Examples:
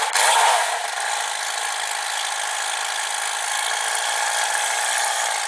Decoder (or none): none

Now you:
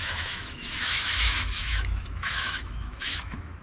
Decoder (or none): autoencoder, DAC-VAE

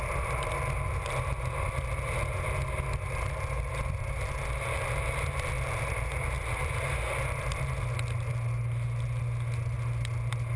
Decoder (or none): none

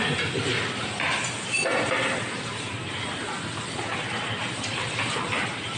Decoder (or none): none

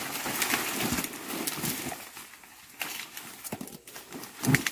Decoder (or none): none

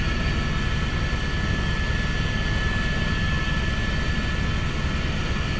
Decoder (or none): none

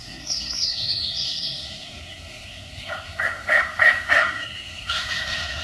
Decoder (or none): codec, SNAC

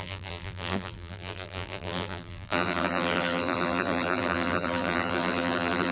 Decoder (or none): vocoder, BigVGAN v2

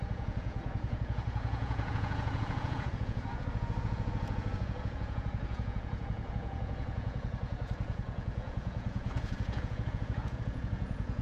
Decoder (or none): vocoder, Vocos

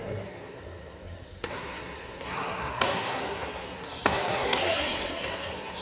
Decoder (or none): codec, SNAC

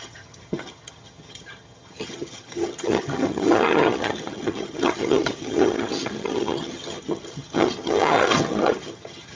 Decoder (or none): vocoder, HiFi-GAN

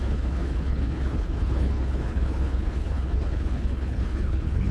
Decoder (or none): codec, HILCodec